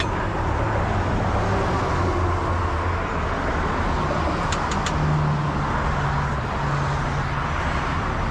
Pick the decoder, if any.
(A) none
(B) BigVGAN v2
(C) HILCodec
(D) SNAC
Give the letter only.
A